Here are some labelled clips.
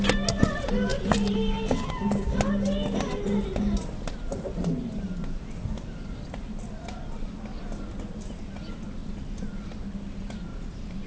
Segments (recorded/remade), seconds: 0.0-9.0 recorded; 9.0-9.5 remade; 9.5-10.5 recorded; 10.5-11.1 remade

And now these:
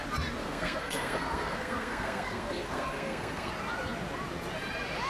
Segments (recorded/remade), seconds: 0.0-0.4 recorded; 0.4-3.5 remade; 3.5-5.1 recorded

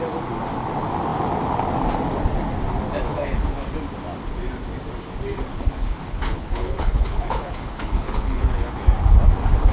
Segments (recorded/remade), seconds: 0.0-3.1 recorded; 3.1-3.7 remade; 3.7-5.5 recorded; 5.5-8.7 remade; 8.7-9.7 recorded

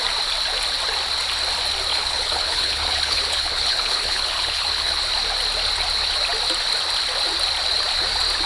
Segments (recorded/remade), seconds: 0.0-1.9 recorded; 1.9-5.0 remade; 5.0-8.5 recorded

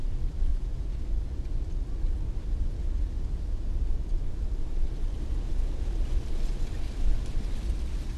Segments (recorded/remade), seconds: 0.0-0.5 recorded; 0.5-1.0 remade; 1.0-8.2 recorded